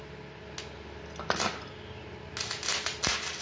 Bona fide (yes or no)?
yes